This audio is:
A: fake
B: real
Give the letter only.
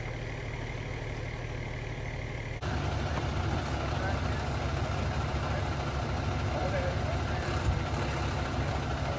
B